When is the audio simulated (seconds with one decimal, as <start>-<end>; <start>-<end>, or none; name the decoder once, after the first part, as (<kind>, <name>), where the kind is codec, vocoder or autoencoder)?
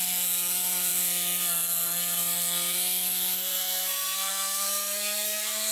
0.0-5.7 (codec, SNAC)